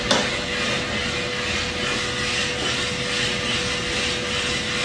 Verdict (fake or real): real